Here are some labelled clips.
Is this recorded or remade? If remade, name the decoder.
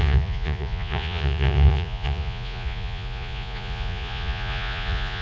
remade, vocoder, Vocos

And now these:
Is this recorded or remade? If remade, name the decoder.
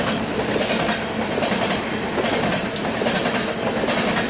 recorded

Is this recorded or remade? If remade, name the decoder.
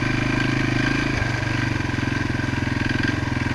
recorded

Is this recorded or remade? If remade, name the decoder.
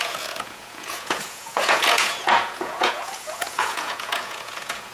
remade, vocoder, Vocos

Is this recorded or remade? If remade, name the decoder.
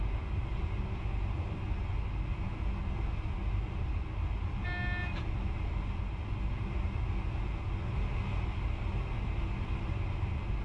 recorded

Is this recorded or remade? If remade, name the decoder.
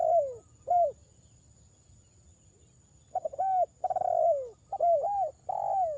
recorded